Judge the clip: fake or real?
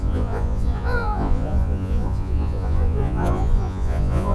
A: fake